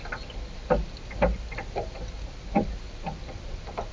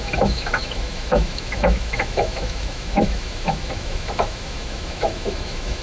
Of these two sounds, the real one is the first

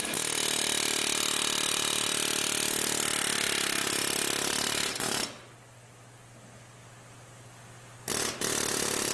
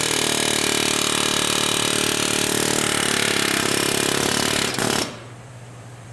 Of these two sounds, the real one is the first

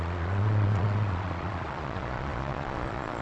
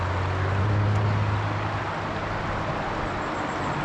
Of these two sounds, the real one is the second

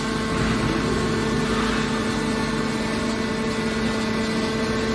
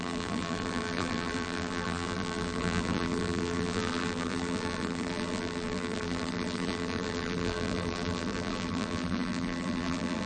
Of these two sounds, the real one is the first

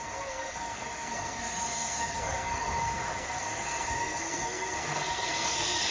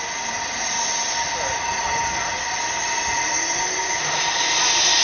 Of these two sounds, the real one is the second